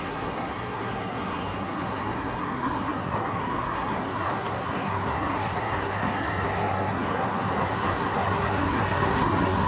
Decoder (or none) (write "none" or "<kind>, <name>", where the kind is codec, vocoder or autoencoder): codec, SNAC